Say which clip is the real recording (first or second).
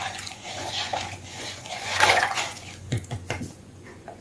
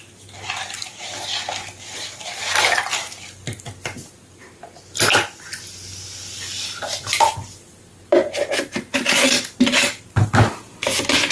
second